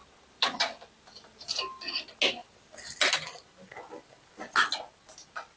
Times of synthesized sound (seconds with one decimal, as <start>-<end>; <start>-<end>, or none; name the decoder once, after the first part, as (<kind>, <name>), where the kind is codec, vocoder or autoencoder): none